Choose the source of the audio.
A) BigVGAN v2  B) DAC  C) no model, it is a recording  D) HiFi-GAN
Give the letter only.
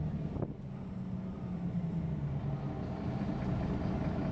C